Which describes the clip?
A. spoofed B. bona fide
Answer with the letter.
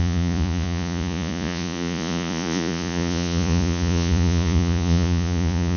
A